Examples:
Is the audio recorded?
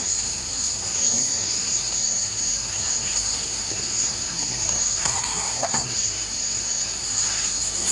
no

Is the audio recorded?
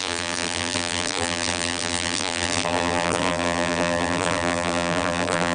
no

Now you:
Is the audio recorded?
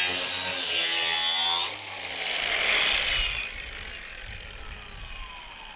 yes